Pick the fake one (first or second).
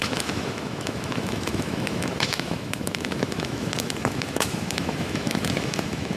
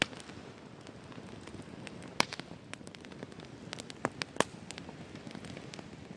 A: first